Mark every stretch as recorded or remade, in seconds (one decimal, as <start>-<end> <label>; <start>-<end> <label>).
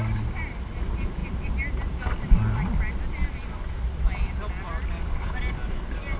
0.0-6.2 recorded